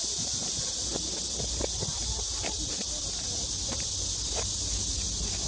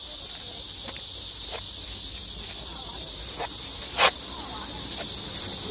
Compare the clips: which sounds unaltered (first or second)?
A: second